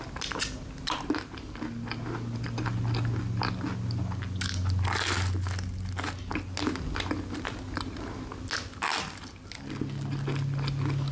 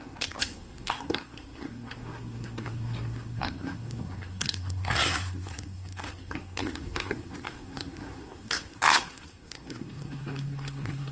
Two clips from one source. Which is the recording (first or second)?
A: first